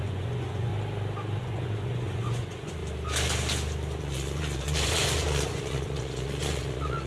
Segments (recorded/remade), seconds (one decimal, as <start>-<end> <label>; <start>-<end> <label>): 0.0-0.7 remade; 0.7-1.4 recorded; 1.4-2.8 remade; 2.8-4.0 recorded; 4.0-7.1 remade